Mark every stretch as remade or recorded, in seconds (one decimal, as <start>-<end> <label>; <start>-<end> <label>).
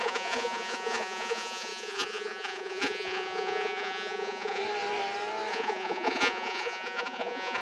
0.0-4.6 remade; 4.6-5.5 recorded; 5.5-7.6 remade